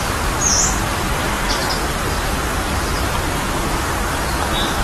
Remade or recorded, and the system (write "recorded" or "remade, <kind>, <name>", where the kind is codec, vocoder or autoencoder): remade, vocoder, BigVGAN v2